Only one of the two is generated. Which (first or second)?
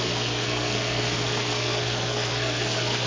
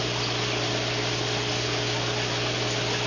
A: first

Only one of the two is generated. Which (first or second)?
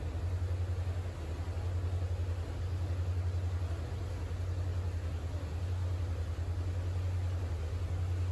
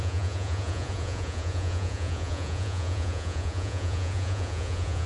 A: second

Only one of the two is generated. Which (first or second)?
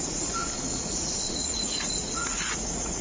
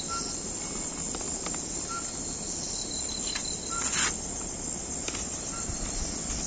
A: first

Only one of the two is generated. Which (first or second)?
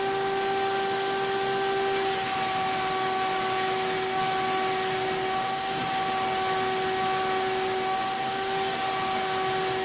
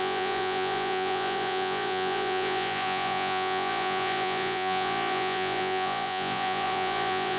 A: second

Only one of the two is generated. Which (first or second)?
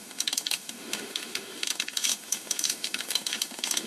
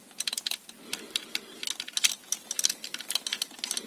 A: first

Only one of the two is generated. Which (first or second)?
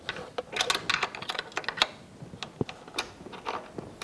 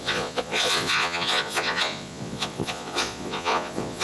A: second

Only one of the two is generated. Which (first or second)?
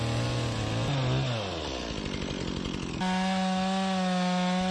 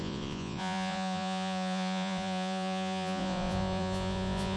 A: second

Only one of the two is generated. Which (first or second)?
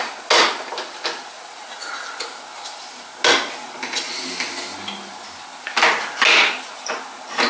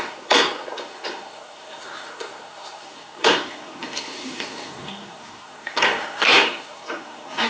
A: second